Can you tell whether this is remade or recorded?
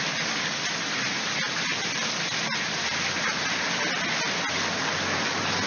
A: recorded